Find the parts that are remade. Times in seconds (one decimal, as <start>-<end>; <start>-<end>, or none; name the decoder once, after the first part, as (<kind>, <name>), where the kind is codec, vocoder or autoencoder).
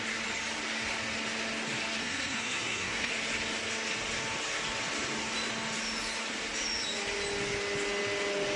2.0-3.1 (codec, SNAC)